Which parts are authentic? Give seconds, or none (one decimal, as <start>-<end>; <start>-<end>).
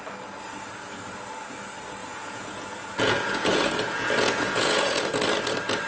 0.0-2.0; 5.0-5.9